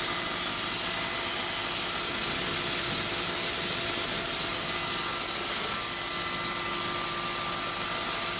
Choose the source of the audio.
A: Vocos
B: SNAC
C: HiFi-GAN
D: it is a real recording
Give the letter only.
D